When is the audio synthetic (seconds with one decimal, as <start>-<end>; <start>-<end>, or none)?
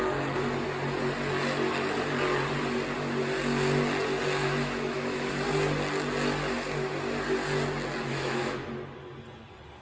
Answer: 4.4-5.3; 8.1-8.7